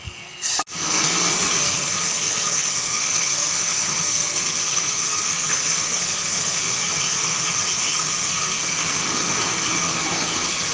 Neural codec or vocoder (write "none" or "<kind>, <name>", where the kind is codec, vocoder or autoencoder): codec, SNAC